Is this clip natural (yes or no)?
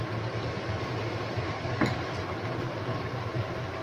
yes